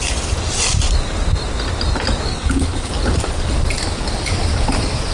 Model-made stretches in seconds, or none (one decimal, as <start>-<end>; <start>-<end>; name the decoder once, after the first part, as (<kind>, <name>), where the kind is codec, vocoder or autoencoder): 2.3-2.9 (codec, HILCodec)